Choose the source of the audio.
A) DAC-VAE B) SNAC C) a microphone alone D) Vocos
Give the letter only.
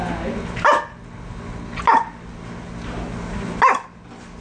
C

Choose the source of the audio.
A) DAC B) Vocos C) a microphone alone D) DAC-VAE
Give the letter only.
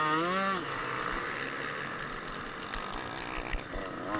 C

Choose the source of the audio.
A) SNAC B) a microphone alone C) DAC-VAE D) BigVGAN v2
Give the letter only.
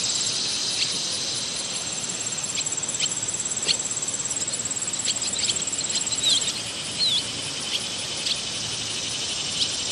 B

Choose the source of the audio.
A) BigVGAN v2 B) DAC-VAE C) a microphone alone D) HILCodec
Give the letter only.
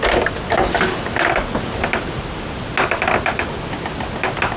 C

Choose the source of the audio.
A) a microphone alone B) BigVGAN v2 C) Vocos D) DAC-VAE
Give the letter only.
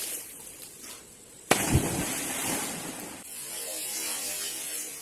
A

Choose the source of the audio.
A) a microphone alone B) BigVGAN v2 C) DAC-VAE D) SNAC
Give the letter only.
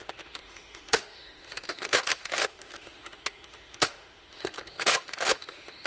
C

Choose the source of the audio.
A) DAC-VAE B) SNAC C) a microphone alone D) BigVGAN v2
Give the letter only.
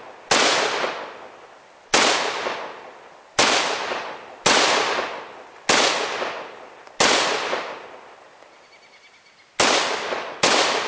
C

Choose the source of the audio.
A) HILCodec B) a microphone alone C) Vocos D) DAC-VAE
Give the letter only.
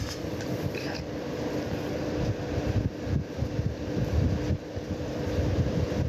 B